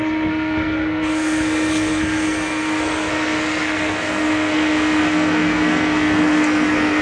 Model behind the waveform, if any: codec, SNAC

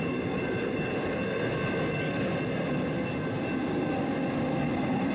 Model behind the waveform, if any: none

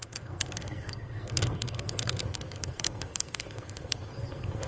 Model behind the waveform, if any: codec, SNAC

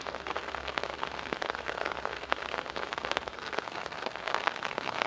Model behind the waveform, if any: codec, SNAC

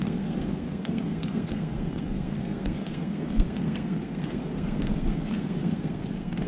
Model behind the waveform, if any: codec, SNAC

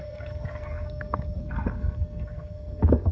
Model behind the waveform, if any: codec, SNAC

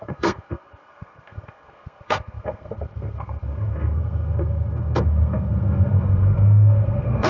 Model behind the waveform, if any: codec, SNAC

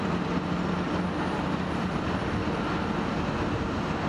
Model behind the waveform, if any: none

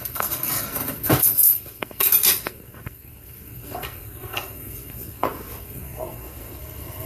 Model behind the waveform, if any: codec, SNAC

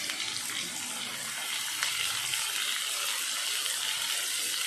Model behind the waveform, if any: none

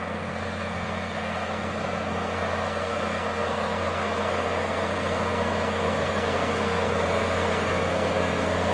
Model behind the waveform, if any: codec, SNAC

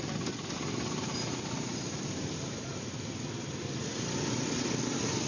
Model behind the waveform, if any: none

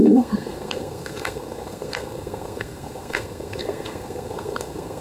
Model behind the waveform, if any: codec, SNAC